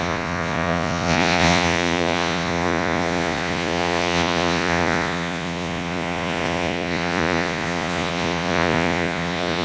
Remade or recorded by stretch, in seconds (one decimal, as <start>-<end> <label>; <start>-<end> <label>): 0.0-9.6 remade